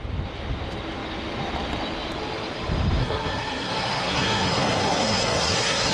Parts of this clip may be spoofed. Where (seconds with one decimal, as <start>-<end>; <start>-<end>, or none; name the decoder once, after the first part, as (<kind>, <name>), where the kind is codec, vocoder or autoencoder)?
3.0-5.9 (codec, SNAC)